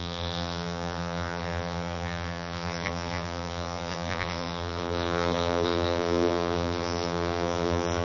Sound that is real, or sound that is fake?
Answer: fake